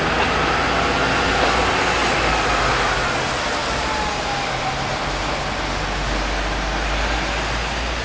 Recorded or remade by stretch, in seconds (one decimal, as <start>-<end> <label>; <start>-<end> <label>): 0.0-8.0 recorded